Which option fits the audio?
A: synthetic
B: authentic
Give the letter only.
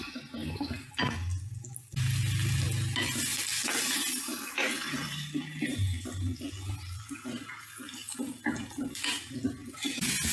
B